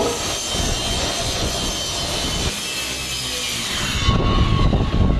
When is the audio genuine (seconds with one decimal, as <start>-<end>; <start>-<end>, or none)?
0.0-0.8; 1.7-5.2